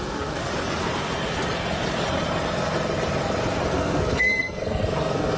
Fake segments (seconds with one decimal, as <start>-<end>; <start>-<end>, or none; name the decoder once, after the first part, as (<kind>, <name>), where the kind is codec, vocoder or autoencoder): 0.0-0.5 (codec, SNAC); 3.7-5.4